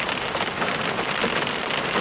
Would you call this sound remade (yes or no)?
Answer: no